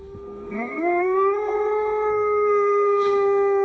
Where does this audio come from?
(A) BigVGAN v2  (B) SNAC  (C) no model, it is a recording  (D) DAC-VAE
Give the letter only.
B